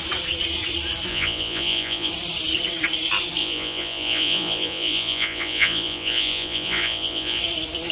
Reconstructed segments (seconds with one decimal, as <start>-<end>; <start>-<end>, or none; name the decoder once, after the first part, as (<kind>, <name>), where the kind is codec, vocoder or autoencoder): 1.1-2.1 (vocoder, Vocos); 3.4-7.4